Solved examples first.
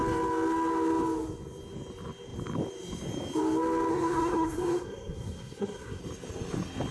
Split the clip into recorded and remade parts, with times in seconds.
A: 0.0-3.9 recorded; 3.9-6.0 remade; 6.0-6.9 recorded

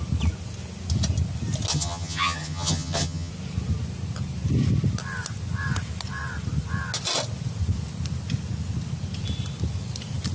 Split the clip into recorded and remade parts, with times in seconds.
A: 0.0-1.7 recorded; 1.7-3.3 remade; 3.3-10.3 recorded

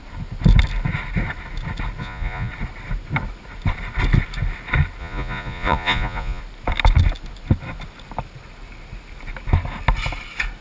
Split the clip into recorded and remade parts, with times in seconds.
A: 0.0-2.0 recorded; 2.0-2.5 remade; 2.5-5.0 recorded; 5.0-6.4 remade; 6.4-10.6 recorded

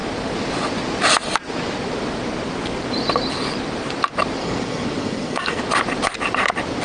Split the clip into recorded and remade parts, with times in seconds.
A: 0.0-4.4 recorded; 4.4-5.6 remade; 5.6-6.8 recorded

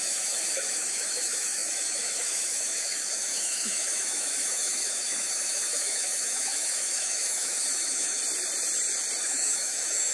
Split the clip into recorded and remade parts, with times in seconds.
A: 0.0-8.2 remade; 8.2-9.2 recorded; 9.2-10.1 remade